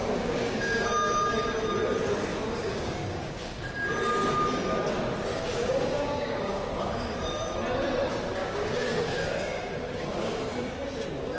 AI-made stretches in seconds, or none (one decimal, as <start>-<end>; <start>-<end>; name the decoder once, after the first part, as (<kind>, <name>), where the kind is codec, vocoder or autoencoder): 0.0-1.5 (codec, DAC); 2.3-3.6; 5.3-7.4; 8.4-10.7